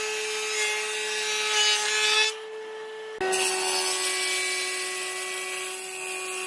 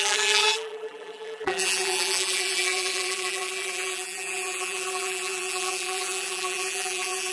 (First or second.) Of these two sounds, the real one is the first